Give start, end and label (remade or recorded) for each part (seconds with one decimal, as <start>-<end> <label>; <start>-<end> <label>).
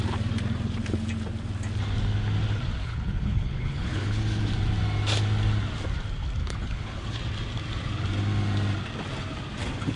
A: 0.0-2.8 recorded; 2.8-4.2 remade; 4.2-6.4 recorded; 6.4-7.2 remade; 7.2-10.0 recorded